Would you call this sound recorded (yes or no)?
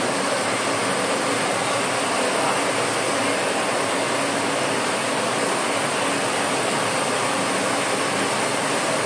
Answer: yes